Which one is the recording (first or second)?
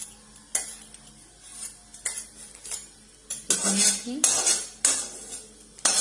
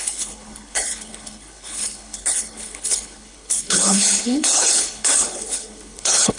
first